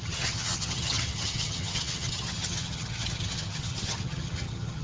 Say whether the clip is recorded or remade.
remade